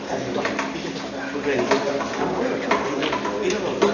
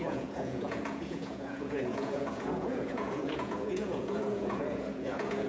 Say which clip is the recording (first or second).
first